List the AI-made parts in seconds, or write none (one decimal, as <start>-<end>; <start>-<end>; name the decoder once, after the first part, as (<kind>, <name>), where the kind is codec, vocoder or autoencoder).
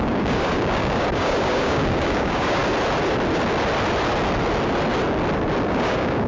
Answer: 0.0-2.6 (codec, DAC); 5.7-6.3